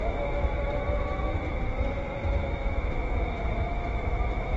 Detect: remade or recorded remade